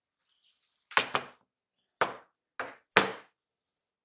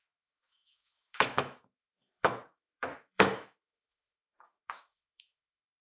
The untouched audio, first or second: first